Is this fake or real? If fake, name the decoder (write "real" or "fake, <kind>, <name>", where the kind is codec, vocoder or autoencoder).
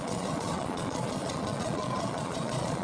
fake, vocoder, Vocos